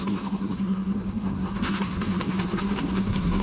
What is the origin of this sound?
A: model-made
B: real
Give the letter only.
A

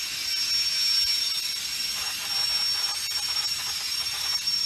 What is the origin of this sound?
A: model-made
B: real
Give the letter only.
B